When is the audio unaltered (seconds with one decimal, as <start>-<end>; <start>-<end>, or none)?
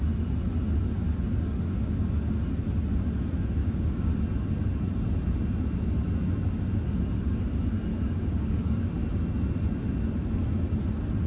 0.0-3.6; 4.1-7.9; 8.9-11.3